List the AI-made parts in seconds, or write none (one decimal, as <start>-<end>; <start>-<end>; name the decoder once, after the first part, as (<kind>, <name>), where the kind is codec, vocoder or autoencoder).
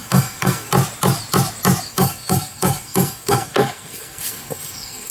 0.0-0.7 (codec, SNAC); 1.9-5.1